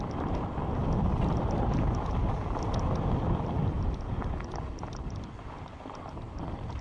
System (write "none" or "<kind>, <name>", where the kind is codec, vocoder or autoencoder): none